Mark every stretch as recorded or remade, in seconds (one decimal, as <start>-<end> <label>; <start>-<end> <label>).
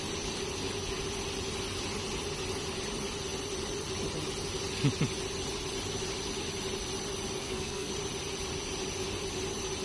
0.0-7.4 recorded; 7.4-7.9 remade; 7.9-9.8 recorded